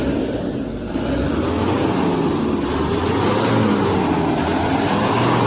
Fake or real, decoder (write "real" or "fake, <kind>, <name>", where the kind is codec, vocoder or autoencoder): real